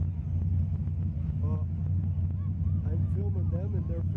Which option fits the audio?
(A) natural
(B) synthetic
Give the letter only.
A